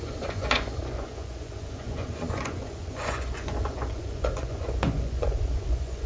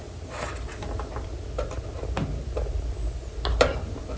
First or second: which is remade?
first